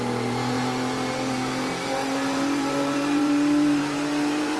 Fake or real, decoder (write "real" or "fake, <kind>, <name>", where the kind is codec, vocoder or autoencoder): fake, vocoder, BigVGAN v2